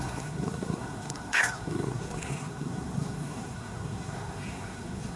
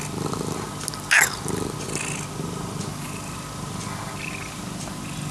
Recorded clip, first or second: second